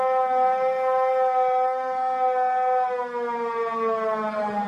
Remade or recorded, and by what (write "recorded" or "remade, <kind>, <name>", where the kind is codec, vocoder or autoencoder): recorded